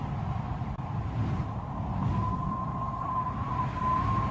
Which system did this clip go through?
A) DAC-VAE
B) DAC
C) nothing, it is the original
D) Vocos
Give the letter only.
C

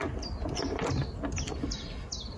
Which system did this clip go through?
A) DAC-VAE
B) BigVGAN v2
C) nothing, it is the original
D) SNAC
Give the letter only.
C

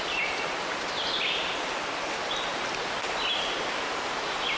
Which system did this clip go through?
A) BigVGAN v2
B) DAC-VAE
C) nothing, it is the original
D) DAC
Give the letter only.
C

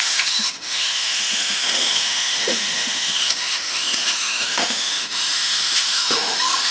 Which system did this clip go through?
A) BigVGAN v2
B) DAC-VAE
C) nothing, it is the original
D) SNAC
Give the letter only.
B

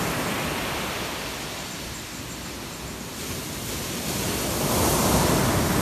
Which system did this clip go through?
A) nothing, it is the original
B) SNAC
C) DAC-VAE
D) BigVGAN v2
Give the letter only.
A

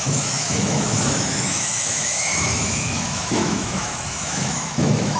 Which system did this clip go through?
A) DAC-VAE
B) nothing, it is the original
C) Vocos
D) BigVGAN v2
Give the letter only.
A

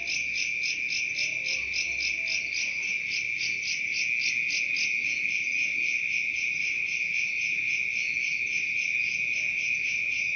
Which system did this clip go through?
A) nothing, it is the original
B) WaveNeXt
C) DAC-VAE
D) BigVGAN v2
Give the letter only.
A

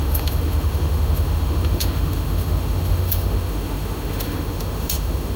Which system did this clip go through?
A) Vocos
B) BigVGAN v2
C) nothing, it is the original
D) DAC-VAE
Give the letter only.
D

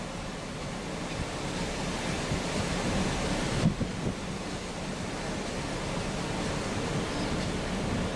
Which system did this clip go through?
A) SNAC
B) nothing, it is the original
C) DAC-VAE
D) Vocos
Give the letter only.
B